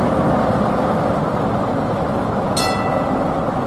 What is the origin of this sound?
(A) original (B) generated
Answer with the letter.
A